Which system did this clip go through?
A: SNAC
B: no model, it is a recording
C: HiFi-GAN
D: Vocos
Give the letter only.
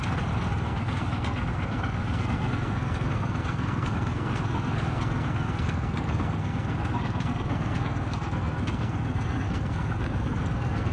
A